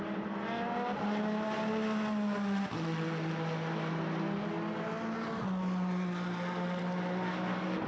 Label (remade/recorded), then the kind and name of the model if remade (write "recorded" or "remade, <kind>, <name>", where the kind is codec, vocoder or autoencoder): recorded